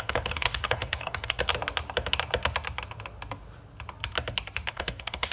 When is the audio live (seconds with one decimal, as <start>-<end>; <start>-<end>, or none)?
1.5-4.7